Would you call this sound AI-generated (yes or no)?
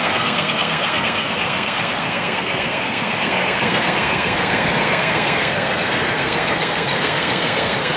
yes